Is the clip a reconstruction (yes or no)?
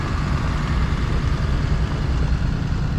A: no